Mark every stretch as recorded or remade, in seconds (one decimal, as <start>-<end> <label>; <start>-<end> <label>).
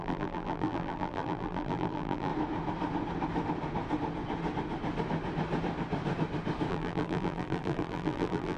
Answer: 0.0-2.3 remade; 2.3-6.7 recorded; 6.7-8.6 remade